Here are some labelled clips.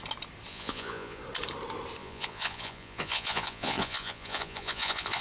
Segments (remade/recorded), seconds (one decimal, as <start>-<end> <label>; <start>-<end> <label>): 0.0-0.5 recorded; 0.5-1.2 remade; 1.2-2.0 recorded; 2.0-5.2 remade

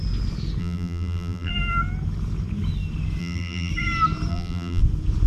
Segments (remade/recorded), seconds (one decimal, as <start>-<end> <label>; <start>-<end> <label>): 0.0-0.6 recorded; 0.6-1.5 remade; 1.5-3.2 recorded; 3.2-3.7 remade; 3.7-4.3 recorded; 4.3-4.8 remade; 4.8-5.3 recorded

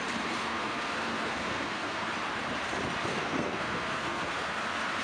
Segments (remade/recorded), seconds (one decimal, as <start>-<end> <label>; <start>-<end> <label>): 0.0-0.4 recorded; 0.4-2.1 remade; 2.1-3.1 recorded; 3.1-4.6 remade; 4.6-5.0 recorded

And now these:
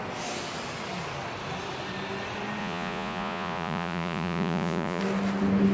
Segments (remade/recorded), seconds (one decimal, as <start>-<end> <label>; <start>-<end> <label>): 0.0-2.6 recorded; 2.6-5.0 remade; 5.0-5.7 recorded

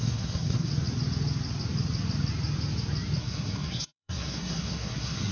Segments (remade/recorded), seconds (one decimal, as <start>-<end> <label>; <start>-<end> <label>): 0.0-0.7 remade; 0.7-3.2 recorded; 3.2-5.3 remade

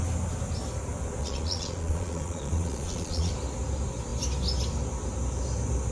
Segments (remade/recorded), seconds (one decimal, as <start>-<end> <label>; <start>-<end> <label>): 0.0-1.2 recorded; 1.2-3.3 remade; 3.3-5.9 recorded